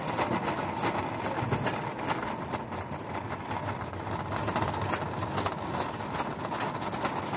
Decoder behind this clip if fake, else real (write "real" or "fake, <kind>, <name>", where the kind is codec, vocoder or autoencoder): real